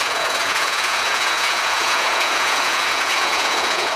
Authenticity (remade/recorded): remade